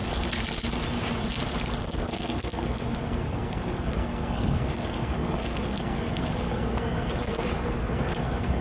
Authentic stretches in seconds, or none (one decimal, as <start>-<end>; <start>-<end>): 0.0-1.8